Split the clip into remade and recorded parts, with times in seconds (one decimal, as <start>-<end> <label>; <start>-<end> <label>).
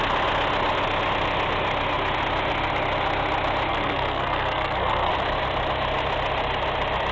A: 0.0-3.7 recorded; 3.7-5.1 remade; 5.1-7.1 recorded